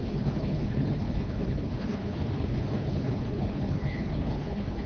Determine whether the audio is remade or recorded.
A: remade